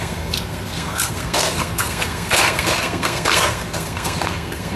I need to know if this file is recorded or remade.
remade